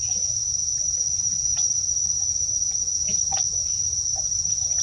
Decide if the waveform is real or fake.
real